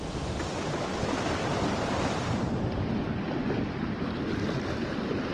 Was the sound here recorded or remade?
recorded